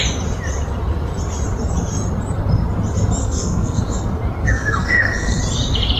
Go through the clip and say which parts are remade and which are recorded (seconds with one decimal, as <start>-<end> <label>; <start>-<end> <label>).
0.0-3.2 recorded; 3.2-3.8 remade; 3.8-4.4 recorded; 4.4-5.4 remade; 5.4-6.0 recorded